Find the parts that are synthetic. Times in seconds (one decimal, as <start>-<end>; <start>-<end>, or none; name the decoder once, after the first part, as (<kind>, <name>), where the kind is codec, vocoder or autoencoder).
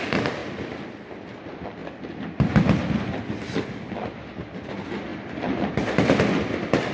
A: 0.0-0.4 (vocoder, BigVGAN v2); 0.9-1.8; 2.5-6.9